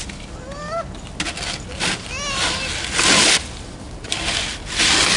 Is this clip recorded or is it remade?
recorded